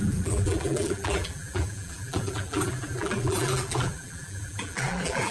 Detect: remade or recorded remade